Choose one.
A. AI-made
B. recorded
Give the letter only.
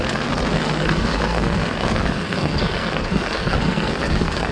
A